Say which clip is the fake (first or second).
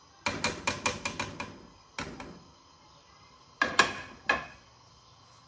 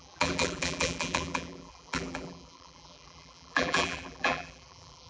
second